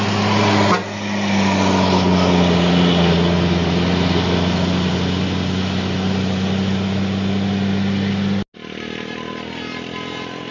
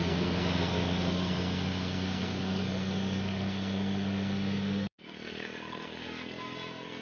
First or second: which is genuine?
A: first